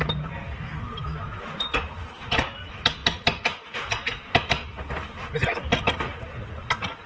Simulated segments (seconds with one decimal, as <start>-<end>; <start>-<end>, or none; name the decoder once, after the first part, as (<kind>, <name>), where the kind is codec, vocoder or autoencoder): 0.0-0.4 (vocoder, BigVGAN v2); 2.3-7.1